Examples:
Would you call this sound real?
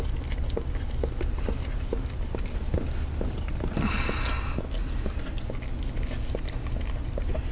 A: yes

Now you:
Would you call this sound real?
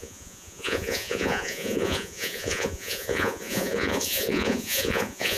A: no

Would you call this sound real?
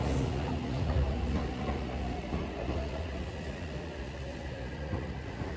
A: no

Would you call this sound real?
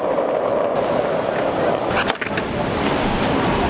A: yes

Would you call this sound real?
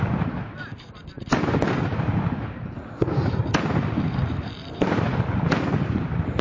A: yes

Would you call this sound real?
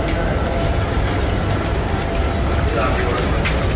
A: yes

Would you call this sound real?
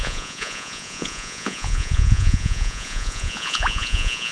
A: no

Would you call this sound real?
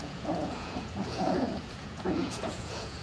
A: no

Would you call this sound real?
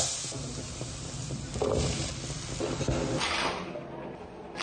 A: yes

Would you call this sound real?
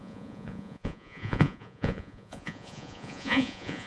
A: no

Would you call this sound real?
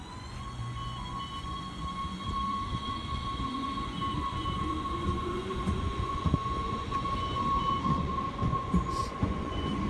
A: no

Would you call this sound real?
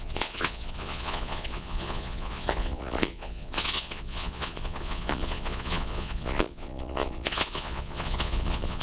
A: no